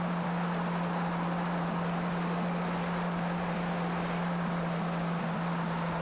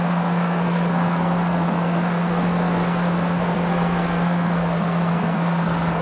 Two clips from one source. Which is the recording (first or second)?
first